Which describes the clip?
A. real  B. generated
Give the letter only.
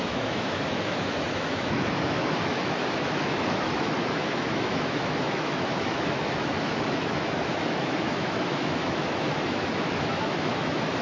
B